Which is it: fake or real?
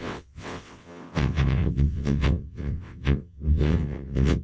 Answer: fake